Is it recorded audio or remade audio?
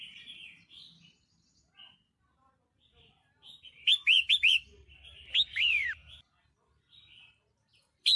remade